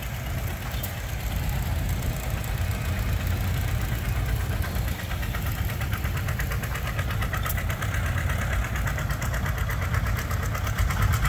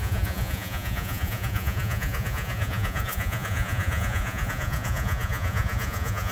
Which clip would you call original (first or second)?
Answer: first